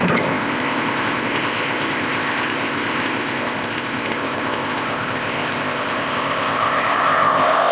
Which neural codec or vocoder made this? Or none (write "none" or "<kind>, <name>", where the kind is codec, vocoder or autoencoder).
codec, ZipCodec